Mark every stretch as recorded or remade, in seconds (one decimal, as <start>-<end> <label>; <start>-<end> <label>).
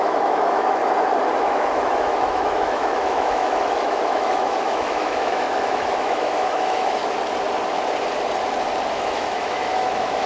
0.0-0.8 remade; 0.8-1.4 recorded; 1.4-7.0 remade; 7.0-8.9 recorded; 8.9-10.3 remade